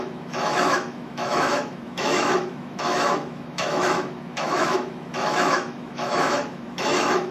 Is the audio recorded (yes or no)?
no